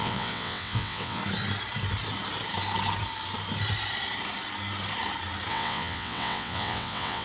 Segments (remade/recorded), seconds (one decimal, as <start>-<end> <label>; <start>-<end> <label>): 0.0-1.2 remade; 1.2-5.5 recorded; 5.5-7.2 remade